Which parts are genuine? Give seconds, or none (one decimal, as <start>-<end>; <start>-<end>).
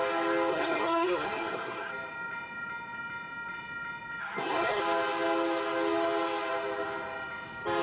0.0-0.5; 1.9-4.2; 4.8-7.8